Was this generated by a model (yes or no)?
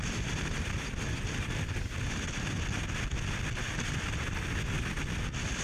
no